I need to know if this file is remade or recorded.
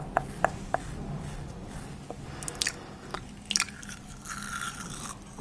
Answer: recorded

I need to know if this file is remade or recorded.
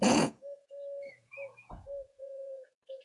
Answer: remade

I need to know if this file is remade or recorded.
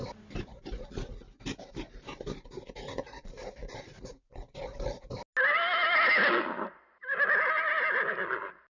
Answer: recorded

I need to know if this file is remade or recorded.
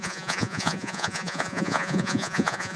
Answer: remade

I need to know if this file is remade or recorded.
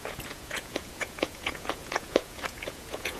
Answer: remade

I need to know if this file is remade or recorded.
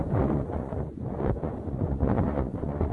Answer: remade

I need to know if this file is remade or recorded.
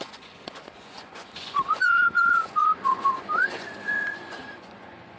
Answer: remade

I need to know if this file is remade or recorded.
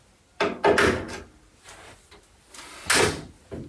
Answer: recorded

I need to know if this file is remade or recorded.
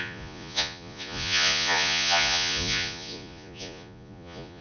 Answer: remade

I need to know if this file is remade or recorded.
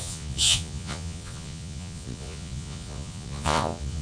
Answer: remade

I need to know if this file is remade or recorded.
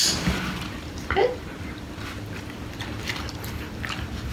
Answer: recorded